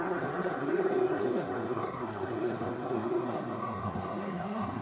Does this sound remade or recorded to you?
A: remade